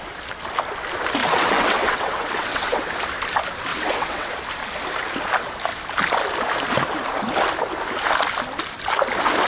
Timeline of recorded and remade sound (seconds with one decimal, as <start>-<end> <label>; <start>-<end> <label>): 0.0-1.2 recorded; 1.2-2.9 remade; 2.9-3.7 recorded; 3.7-4.3 remade; 4.3-9.5 recorded